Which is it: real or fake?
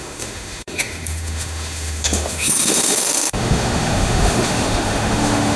fake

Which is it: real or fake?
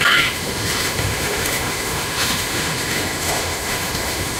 fake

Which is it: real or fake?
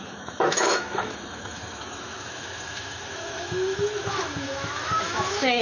fake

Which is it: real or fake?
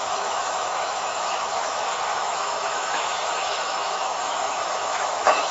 fake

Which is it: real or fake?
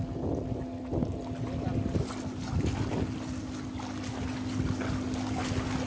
real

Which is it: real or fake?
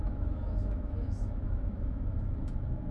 fake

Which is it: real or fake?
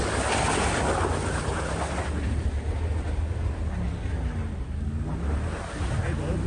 real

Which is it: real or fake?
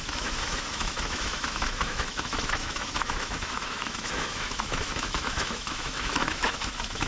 fake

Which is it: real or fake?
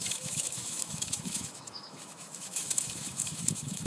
fake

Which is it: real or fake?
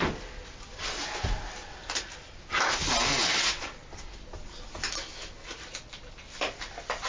real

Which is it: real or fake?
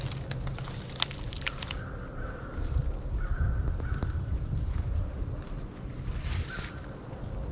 real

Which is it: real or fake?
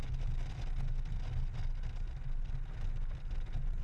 real